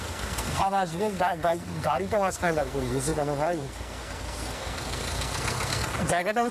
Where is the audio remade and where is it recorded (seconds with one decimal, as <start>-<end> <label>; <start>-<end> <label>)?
0.0-6.5 remade